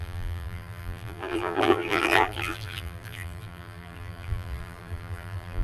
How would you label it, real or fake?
fake